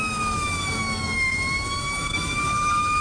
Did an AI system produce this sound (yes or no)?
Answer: yes